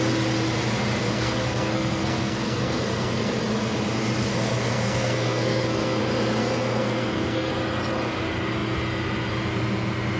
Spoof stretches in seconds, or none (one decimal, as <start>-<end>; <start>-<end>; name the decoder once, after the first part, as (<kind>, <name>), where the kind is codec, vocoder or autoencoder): 1.0-3.3 (codec, SNAC); 4.3-6.0; 6.4-7.5